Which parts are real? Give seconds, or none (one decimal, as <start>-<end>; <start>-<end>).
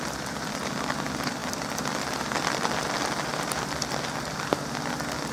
none